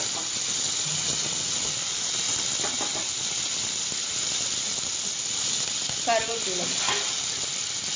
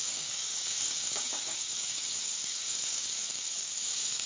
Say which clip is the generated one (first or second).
second